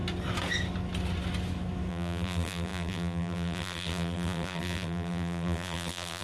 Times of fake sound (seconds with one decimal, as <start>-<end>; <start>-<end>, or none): 1.9-6.2